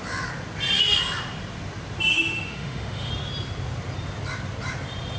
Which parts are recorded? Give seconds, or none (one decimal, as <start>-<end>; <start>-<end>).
0.0-2.1; 3.1-5.2